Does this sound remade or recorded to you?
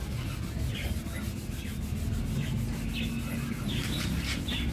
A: recorded